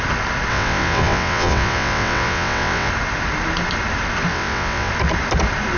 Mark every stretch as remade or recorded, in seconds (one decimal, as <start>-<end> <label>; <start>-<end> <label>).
0.0-0.5 recorded; 0.5-2.9 remade; 2.9-4.3 recorded; 4.3-4.9 remade; 4.9-5.8 recorded